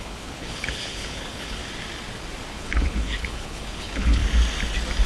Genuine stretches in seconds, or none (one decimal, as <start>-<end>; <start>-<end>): 1.6-2.5; 4.2-5.1